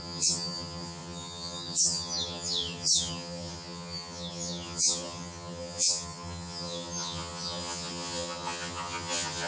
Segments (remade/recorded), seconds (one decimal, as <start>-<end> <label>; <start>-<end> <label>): 0.0-9.5 remade